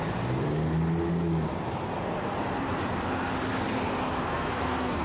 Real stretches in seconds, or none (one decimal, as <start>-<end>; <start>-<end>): 0.0-4.3